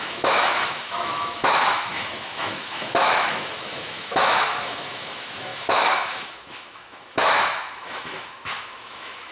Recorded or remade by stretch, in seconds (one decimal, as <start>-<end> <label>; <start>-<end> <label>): 0.0-9.3 remade

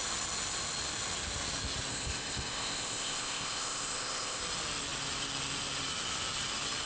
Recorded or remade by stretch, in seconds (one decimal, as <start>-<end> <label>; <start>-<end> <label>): 0.0-1.9 recorded; 1.9-4.4 remade; 4.4-6.9 recorded

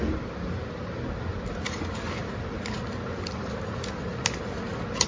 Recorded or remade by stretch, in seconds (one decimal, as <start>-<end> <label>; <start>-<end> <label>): 0.0-5.1 recorded

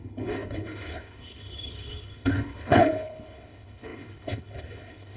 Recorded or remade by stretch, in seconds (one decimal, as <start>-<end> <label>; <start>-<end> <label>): 0.0-5.2 remade

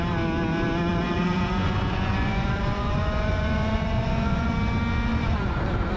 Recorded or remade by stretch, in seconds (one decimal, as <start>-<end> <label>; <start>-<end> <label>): 0.0-0.9 recorded; 0.9-4.5 remade; 4.5-5.1 recorded; 5.1-5.6 remade; 5.6-6.0 recorded

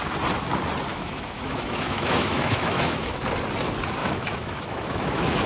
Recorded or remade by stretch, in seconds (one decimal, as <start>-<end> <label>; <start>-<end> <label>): 0.0-0.9 recorded; 0.9-3.2 remade; 3.2-4.0 recorded; 4.0-5.5 remade